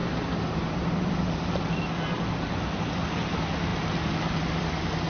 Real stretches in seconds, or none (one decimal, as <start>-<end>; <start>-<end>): 1.1-5.1

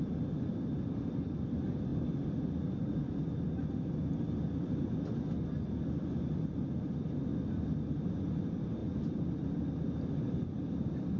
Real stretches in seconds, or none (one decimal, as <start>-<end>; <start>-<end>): 1.9-5.8; 7.3-8.1; 8.8-10.1

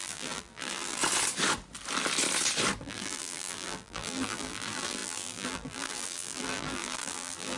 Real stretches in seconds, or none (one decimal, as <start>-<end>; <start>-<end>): 1.0-2.8